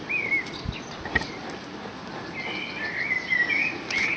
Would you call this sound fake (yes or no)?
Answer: no